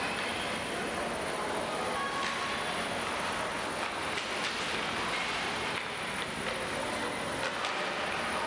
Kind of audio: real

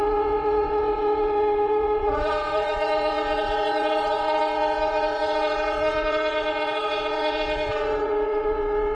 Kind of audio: fake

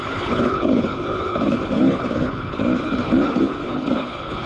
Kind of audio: fake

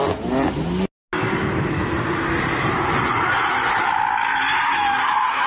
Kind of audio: real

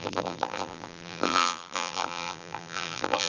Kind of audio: fake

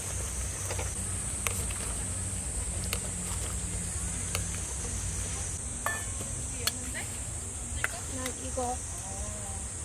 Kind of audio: real